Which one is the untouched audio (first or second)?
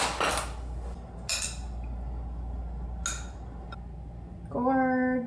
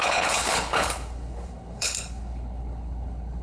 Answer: first